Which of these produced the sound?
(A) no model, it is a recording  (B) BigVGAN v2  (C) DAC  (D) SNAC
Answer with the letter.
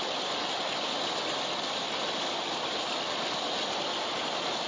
B